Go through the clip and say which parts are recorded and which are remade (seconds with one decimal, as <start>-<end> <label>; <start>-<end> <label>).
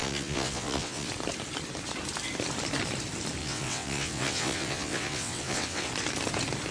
0.0-1.1 remade; 1.1-3.4 recorded; 3.4-5.9 remade; 5.9-6.7 recorded